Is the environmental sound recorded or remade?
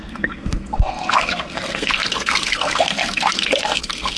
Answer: remade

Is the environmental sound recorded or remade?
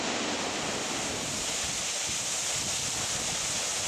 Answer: recorded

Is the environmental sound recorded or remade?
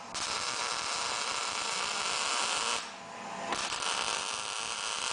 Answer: recorded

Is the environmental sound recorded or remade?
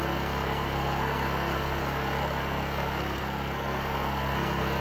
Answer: remade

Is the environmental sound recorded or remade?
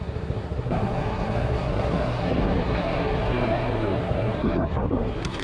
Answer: remade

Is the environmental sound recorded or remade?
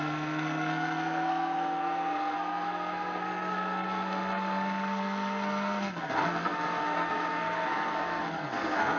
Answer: remade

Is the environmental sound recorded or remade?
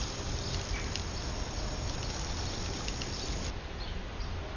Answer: recorded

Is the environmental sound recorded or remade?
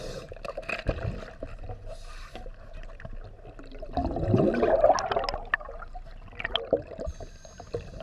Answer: recorded